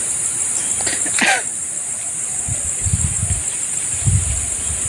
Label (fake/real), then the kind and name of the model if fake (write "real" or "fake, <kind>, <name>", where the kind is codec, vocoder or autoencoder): real